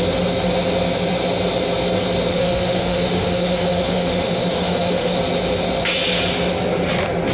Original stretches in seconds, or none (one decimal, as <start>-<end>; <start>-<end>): 0.0-2.3; 5.2-7.3